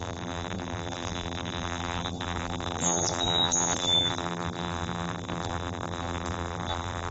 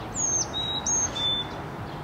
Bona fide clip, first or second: second